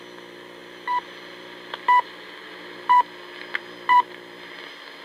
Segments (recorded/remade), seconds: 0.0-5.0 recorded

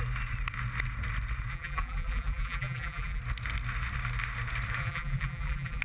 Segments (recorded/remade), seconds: 0.0-1.5 recorded; 1.5-3.2 remade; 3.2-4.8 recorded; 4.8-5.8 remade

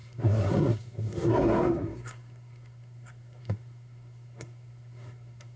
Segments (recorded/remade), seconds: 0.0-5.6 remade